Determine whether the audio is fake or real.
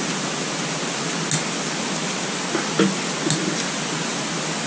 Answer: real